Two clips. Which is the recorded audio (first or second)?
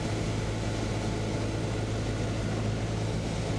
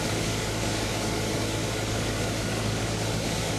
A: first